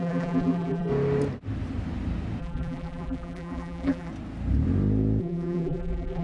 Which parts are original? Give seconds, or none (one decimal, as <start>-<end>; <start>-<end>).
0.9-2.4; 4.1-5.2